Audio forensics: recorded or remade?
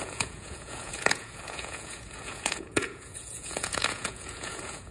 remade